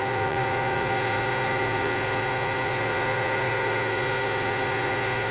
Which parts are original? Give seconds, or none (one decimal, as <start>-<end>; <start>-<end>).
none